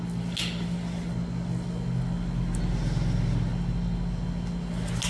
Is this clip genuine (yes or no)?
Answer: yes